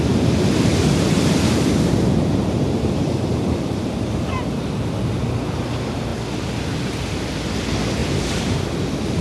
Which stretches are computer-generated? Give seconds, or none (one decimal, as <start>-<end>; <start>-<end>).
0.7-5.0; 8.0-8.6